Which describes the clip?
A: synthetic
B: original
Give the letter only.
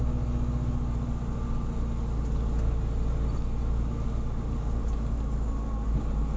B